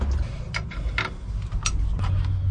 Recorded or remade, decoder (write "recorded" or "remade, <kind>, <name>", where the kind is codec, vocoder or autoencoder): recorded